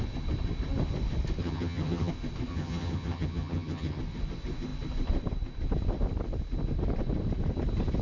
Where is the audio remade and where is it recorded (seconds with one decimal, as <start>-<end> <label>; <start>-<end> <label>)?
0.0-1.4 recorded; 1.4-2.1 remade; 2.1-2.5 recorded; 2.5-4.0 remade; 4.0-8.0 recorded